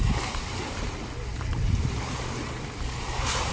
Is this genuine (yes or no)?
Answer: yes